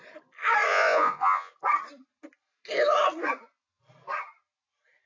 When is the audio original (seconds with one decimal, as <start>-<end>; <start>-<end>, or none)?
0.0-0.7; 1.5-5.1